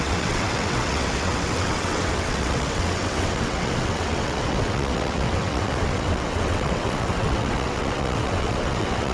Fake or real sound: fake